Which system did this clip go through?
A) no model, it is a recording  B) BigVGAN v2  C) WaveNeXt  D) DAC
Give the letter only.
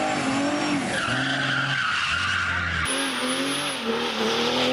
A